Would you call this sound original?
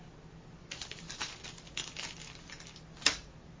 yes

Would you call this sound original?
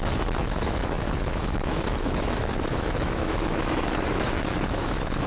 no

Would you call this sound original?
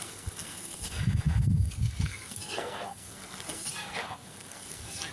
no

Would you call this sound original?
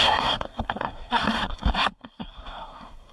no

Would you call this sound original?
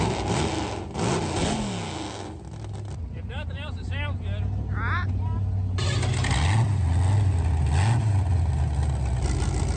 yes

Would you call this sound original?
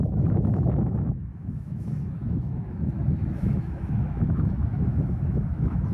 no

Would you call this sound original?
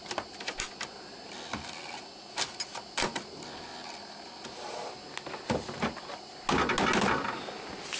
yes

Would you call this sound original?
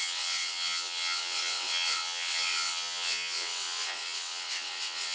no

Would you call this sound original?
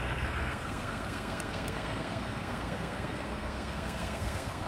no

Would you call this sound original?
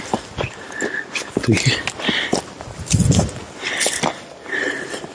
yes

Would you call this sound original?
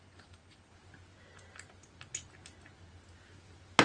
yes